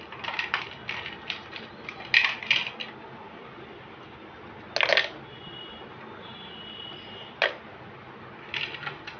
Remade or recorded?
recorded